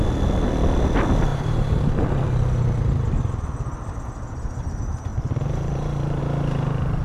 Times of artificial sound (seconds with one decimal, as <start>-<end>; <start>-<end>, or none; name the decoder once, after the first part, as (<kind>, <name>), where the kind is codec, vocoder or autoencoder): 1.3-2.6 (vocoder, BigVGAN v2); 5.1-6.2